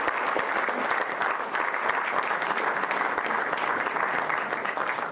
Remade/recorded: recorded